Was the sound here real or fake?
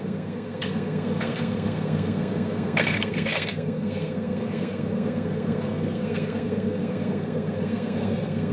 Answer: fake